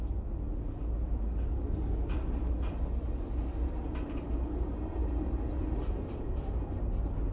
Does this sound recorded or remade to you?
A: recorded